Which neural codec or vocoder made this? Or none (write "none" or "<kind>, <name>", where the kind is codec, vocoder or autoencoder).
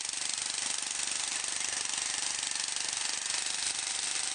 none